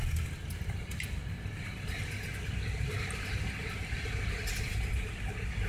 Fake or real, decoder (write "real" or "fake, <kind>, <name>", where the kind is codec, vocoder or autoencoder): real